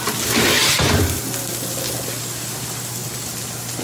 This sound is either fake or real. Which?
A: real